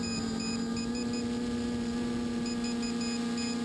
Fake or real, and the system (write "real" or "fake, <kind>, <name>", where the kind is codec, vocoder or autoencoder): real